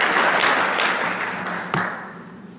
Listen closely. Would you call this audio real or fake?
real